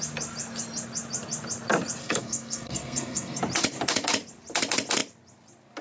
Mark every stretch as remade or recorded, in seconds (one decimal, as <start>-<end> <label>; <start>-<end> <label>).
0.0-2.0 recorded; 2.0-3.4 remade; 3.4-5.8 recorded